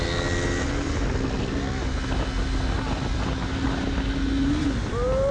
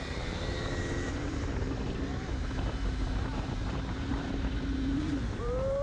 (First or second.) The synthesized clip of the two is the second